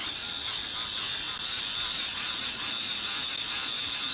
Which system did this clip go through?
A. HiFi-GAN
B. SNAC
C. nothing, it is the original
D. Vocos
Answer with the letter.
C